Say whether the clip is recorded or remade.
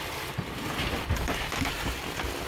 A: recorded